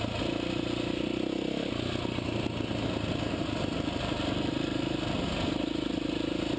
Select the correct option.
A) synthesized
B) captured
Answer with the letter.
B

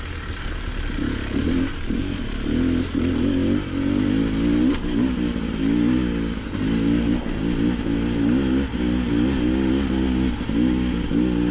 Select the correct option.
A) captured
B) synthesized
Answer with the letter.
A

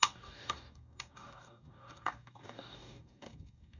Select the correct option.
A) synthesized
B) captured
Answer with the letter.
A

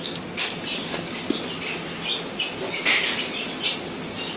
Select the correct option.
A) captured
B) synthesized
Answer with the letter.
A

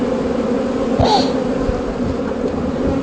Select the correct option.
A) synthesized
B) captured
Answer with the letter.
B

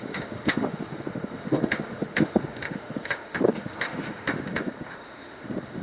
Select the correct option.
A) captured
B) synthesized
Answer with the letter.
B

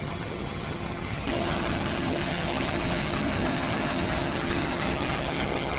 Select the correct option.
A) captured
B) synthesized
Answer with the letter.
B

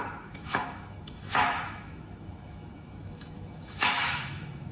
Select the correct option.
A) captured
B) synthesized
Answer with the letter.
B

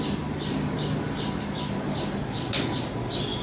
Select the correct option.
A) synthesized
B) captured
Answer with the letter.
B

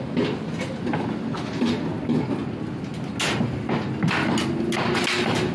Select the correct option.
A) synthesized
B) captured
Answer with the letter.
B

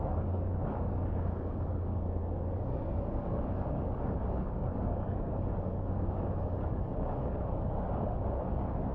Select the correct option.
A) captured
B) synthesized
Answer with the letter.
B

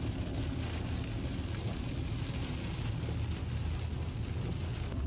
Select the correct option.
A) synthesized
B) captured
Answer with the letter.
B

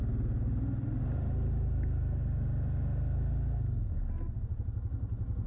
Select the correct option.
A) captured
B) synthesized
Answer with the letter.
A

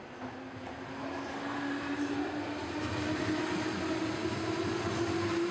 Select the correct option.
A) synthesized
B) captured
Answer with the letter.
B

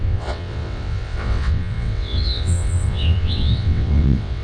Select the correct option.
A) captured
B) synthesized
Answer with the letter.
B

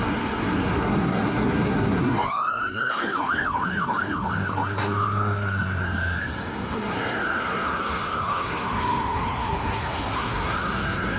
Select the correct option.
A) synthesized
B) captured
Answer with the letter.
A